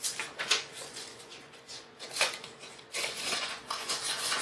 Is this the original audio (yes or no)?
no